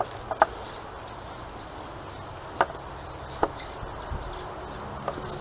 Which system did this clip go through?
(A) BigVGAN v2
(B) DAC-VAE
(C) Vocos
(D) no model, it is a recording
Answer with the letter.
D